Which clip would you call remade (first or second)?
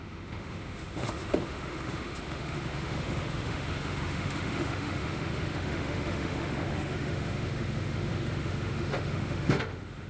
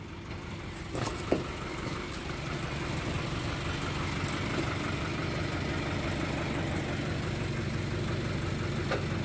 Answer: first